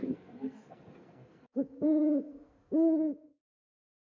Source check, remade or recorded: remade